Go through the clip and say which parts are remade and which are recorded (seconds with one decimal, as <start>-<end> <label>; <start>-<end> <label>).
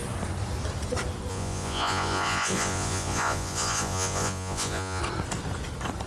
0.0-1.3 recorded; 1.3-5.0 remade; 5.0-6.1 recorded